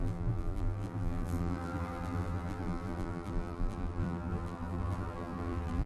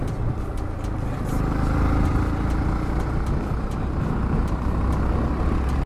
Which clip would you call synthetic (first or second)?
first